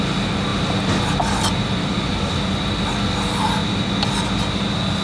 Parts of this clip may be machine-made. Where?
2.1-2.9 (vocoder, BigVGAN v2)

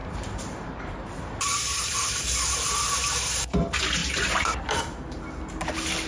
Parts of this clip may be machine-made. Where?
0.0-3.6 (vocoder, BigVGAN v2); 4.0-5.2

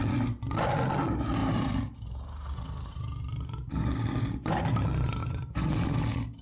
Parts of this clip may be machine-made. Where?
1.4-3.7 (vocoder, BigVGAN v2); 5.2-6.0